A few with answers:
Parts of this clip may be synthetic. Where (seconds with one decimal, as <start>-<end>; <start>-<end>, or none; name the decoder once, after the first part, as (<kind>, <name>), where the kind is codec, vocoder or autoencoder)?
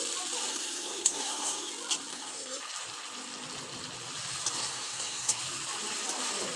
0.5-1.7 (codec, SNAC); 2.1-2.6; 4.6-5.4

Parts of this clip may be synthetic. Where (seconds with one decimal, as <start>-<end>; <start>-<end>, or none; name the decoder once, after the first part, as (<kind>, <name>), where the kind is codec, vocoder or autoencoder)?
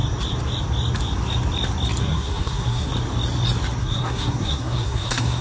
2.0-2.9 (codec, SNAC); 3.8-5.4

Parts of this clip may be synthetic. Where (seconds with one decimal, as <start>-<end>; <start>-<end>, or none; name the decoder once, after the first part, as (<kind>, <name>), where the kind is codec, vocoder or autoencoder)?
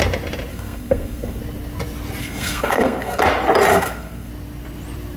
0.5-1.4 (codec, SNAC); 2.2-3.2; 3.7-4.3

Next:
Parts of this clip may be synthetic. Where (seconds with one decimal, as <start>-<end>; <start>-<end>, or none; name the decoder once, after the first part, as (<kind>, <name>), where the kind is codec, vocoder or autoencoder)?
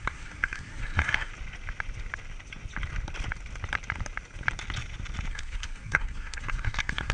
0.0-1.3 (codec, SNAC); 5.3-7.1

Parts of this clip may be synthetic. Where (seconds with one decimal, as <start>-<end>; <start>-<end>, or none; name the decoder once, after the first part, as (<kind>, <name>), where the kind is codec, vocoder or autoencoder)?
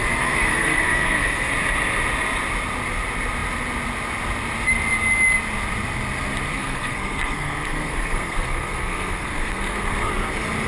0.0-1.5 (codec, SNAC); 6.5-10.1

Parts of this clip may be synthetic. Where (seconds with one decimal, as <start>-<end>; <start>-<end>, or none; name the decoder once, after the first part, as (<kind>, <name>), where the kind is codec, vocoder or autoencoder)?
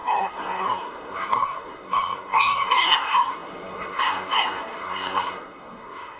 0.0-6.2 (codec, SNAC)